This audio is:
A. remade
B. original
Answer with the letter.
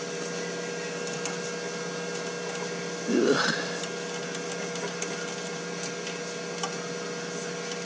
B